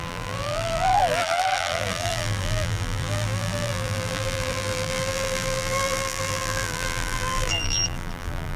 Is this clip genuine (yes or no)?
no